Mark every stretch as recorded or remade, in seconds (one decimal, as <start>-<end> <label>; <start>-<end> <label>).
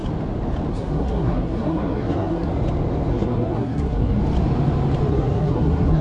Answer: 0.0-0.7 recorded; 0.7-2.5 remade; 2.5-3.1 recorded; 3.1-4.2 remade; 4.2-5.1 recorded; 5.1-6.0 remade